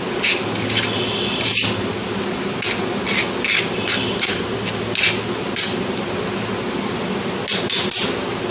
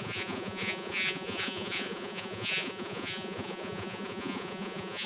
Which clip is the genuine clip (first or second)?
first